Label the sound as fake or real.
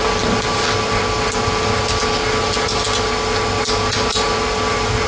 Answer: real